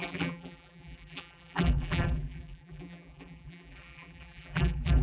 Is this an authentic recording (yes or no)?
no